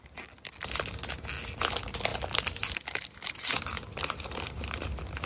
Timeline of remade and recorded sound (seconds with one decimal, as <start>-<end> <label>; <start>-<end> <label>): 0.0-2.1 recorded; 2.1-5.3 remade